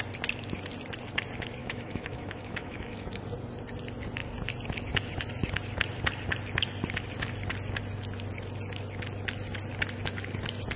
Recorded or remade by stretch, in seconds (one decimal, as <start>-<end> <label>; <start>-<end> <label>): 0.0-1.6 recorded; 1.6-3.1 remade; 3.1-10.8 recorded